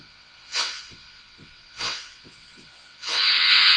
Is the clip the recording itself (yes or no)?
no